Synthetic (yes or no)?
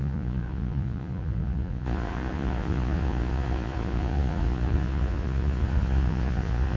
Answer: yes